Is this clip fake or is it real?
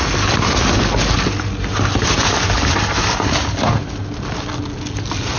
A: real